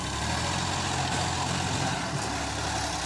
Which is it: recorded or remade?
recorded